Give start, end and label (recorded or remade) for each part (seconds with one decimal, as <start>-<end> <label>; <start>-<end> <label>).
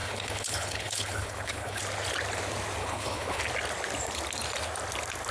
0.0-1.8 remade; 1.8-2.8 recorded; 2.8-3.4 remade; 3.4-5.3 recorded